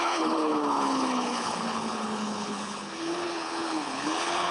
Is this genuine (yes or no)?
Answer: no